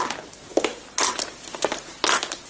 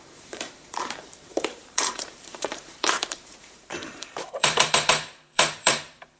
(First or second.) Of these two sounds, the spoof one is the second